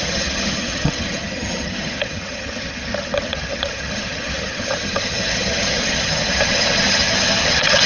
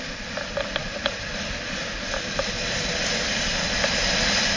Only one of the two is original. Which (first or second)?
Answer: second